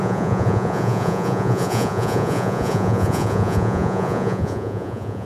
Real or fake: fake